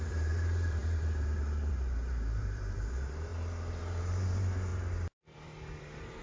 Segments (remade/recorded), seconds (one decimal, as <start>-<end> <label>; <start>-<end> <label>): 0.0-4.7 remade; 4.7-5.8 recorded; 5.8-6.2 remade